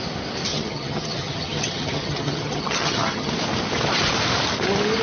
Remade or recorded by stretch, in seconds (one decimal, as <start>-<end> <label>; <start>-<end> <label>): 0.0-0.5 recorded; 0.5-3.3 remade; 3.3-5.0 recorded